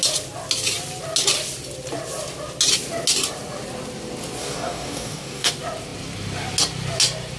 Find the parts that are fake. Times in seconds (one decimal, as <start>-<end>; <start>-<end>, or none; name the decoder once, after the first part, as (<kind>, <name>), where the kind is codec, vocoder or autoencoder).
4.4-5.5 (codec, DAC)

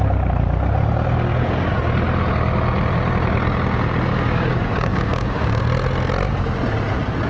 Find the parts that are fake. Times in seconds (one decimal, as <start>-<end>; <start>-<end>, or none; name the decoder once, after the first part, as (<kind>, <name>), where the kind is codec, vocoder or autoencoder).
4.1-5.6 (codec, DAC)

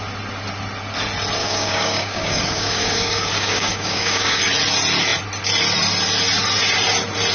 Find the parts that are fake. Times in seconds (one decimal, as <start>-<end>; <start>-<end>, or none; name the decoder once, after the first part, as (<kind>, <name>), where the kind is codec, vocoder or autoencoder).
1.4-4.4 (codec, DAC)

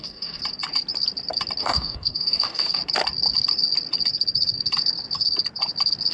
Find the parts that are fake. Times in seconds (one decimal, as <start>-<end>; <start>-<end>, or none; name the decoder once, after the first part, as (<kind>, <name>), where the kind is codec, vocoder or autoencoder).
0.0-0.4 (codec, DAC); 1.6-2.8

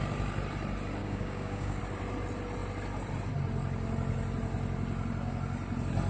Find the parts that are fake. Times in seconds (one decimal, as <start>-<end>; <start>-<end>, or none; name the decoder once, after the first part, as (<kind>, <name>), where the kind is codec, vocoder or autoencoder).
1.0-1.8 (codec, DAC)

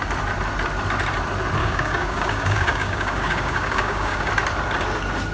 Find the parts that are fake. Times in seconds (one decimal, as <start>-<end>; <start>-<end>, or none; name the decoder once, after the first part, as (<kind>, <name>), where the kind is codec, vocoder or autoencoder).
1.6-4.3 (codec, DAC)

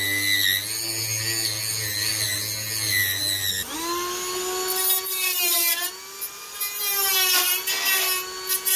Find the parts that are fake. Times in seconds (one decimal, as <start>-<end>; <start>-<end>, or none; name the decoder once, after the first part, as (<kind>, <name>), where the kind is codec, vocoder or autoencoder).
none